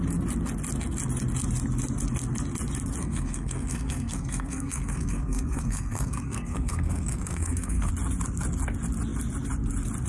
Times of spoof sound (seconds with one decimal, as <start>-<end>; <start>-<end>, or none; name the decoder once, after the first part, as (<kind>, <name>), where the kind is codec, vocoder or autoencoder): 3.0-7.9 (codec, SNAC)